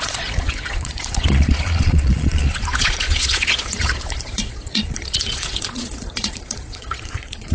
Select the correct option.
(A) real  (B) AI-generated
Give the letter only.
B